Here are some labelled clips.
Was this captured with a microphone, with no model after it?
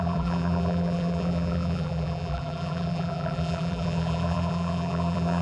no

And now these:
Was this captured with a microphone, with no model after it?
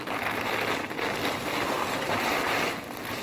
yes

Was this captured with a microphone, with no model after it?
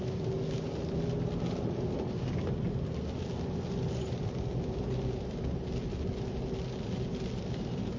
yes